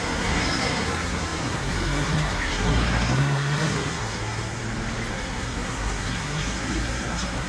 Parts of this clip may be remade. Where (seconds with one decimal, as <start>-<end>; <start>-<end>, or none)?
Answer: 0.0-4.6; 5.1-7.5